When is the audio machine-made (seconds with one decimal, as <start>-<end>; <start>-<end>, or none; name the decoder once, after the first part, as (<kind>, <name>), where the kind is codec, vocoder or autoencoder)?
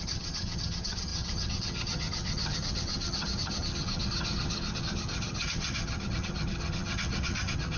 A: 0.0-7.8 (vocoder, HiFi-GAN)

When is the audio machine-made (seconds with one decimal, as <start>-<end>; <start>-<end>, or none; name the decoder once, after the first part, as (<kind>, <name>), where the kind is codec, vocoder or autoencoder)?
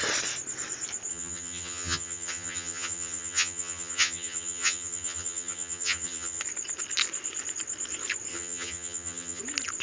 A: 1.1-6.4 (vocoder, HiFi-GAN); 8.3-9.4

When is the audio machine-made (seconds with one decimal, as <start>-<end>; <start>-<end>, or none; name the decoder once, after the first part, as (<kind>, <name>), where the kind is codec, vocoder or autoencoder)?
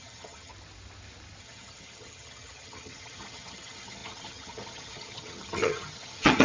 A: 0.0-0.5 (vocoder, HiFi-GAN); 1.4-6.4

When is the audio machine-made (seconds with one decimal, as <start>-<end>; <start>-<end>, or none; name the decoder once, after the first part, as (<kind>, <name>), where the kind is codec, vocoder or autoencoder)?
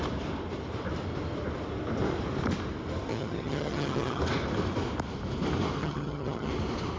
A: 3.1-4.2 (vocoder, HiFi-GAN); 5.8-6.5